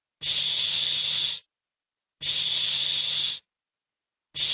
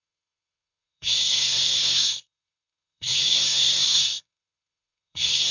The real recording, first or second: first